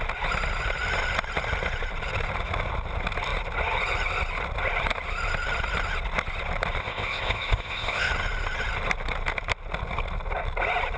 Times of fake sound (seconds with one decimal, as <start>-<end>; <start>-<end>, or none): 6.8-8.1